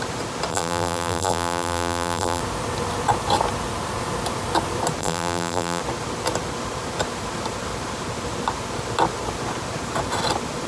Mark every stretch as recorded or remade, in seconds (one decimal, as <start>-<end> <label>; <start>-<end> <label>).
0.0-0.5 recorded; 0.5-2.4 remade; 2.4-5.0 recorded; 5.0-5.8 remade; 5.8-10.7 recorded